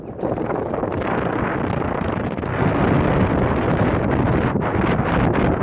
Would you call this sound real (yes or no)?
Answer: yes